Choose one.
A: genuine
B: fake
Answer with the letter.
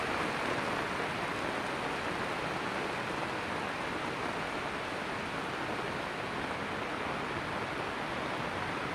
A